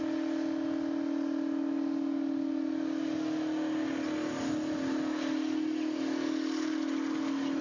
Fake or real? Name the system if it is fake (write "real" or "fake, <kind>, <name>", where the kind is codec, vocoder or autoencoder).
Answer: real